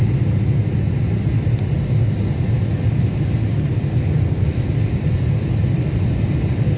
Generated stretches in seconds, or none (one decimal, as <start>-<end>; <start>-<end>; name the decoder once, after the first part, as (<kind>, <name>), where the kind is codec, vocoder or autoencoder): none